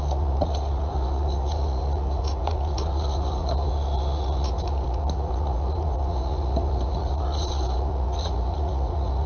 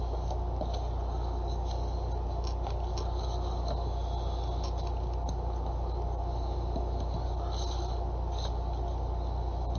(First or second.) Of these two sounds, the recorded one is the second